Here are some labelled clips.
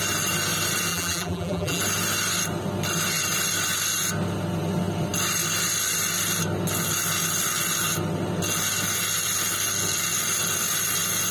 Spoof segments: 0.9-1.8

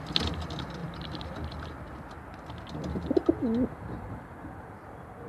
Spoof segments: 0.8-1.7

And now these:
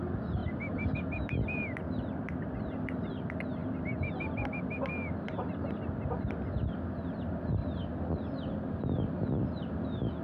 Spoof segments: 0.4-2.4; 7.6-10.2

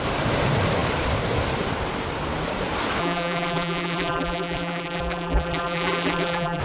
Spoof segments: 3.0-6.6